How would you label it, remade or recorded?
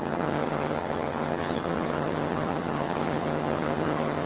remade